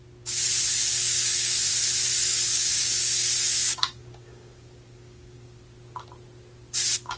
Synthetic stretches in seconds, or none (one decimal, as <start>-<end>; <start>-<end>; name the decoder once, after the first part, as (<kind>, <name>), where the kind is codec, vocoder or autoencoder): 0.9-1.7 (codec, DAC); 2.3-5.6